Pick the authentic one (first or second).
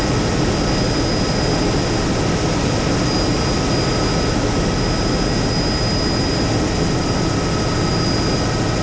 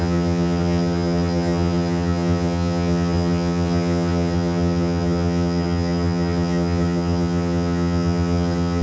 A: first